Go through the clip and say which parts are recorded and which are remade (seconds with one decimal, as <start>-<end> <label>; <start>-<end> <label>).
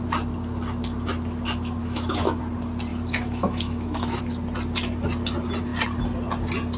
0.0-1.8 recorded; 1.8-2.4 remade; 2.4-2.9 recorded; 2.9-4.2 remade; 4.2-6.8 recorded